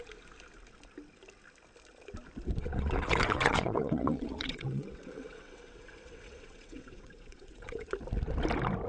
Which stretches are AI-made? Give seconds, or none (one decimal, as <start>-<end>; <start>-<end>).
2.6-7.9

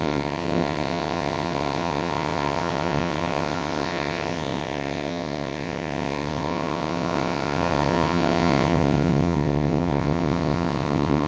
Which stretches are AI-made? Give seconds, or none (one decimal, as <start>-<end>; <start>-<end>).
0.0-11.3

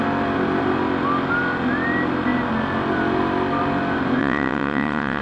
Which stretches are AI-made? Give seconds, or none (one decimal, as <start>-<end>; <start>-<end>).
4.2-5.2

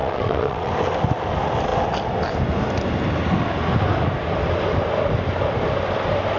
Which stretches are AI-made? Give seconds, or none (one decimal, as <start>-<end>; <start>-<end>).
0.0-0.7

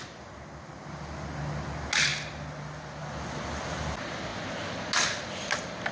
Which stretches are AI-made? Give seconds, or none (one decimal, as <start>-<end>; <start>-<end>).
none